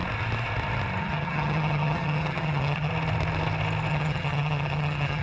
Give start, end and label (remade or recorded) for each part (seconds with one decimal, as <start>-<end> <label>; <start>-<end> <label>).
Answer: 0.0-1.0 recorded; 1.0-2.9 remade; 2.9-3.9 recorded; 3.9-5.2 remade